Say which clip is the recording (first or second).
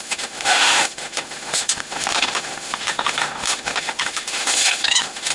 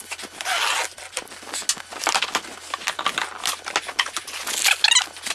second